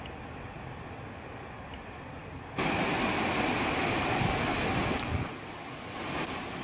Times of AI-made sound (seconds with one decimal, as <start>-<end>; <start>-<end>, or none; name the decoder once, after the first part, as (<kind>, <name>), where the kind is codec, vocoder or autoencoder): none